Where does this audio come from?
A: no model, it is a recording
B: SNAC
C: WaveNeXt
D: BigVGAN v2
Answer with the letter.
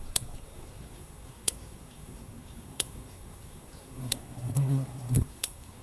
B